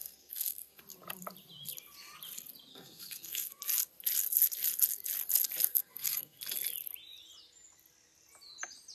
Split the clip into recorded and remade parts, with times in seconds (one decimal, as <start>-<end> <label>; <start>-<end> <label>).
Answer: 0.0-0.8 remade; 0.8-2.7 recorded; 2.7-3.6 remade; 3.6-5.7 recorded; 5.7-6.4 remade; 6.4-8.9 recorded

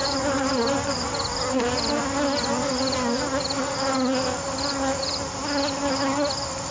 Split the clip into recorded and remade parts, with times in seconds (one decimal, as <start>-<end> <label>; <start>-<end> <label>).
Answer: 0.0-6.7 recorded

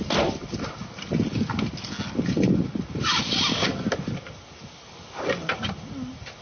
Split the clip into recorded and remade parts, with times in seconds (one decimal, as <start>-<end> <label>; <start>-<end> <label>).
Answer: 0.0-6.4 recorded

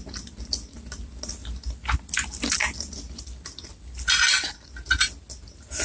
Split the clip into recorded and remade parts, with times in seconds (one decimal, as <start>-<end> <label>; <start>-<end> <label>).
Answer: 0.0-5.8 recorded